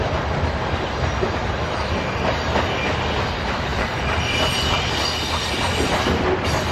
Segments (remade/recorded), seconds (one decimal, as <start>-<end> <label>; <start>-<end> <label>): 0.0-3.7 recorded; 3.7-4.9 remade; 4.9-6.7 recorded

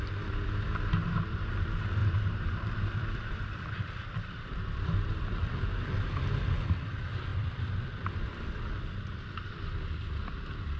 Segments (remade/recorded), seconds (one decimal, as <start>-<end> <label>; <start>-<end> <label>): 0.0-2.0 recorded; 2.0-6.0 remade; 6.0-7.3 recorded; 7.3-9.5 remade; 9.5-10.8 recorded